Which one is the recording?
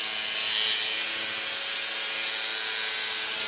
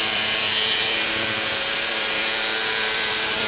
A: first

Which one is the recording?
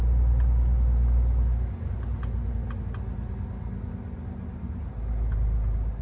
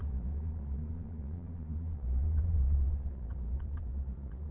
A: first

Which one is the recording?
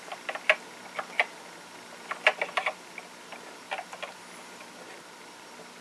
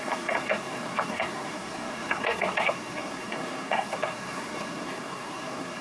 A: first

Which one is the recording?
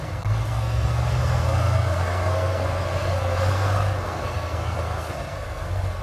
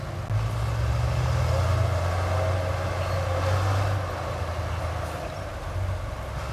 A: second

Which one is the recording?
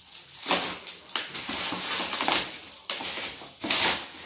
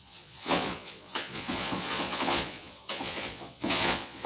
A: first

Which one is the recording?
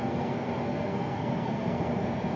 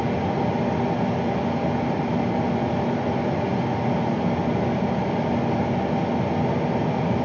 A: second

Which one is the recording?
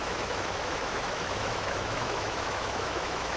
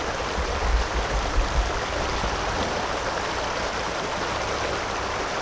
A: second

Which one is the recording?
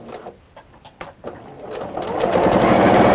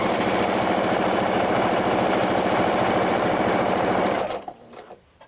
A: first